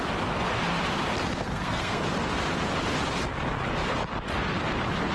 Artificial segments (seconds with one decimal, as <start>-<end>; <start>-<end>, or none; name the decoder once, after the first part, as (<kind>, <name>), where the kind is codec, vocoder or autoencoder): 1.2-2.0 (codec, SNAC)